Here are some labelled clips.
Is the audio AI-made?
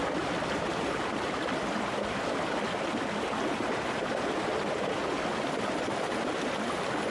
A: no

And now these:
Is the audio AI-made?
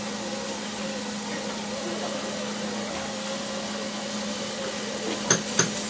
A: no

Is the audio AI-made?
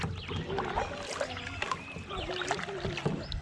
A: no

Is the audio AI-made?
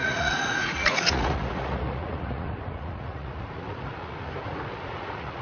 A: yes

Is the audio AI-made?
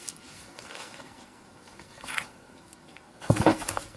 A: yes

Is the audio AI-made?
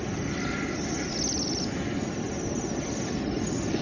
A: no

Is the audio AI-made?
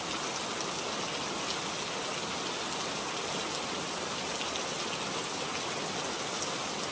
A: no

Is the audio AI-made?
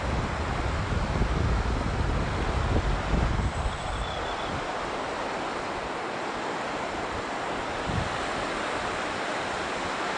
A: no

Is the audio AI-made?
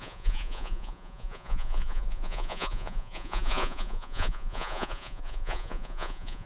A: yes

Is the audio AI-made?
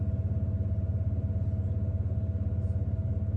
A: no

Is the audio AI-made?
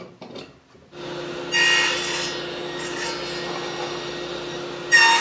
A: no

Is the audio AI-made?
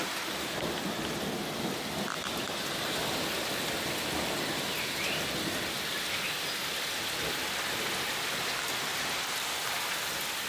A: no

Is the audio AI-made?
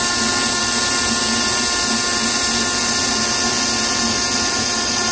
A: no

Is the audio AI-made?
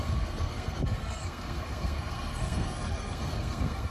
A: yes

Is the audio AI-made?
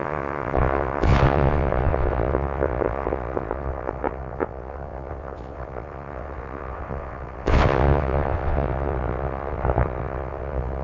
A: yes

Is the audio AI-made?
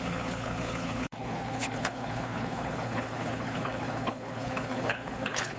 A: yes